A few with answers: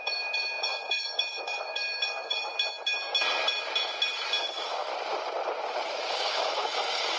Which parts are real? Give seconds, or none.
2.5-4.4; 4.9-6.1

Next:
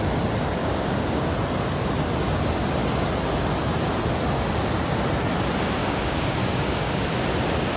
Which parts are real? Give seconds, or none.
0.0-0.6; 1.3-5.8; 7.0-7.8

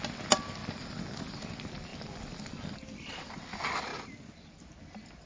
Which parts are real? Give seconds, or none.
0.0-0.6; 1.4-1.9; 2.4-5.3

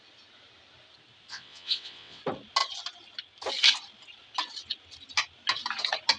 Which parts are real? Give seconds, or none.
0.0-1.3; 2.2-6.2